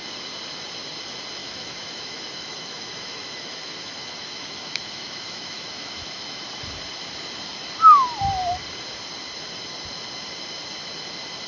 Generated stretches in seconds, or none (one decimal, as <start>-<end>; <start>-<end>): 1.4-6.5